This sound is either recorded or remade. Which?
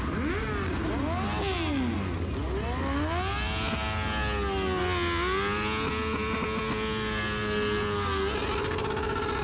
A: recorded